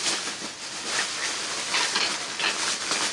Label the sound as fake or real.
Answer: real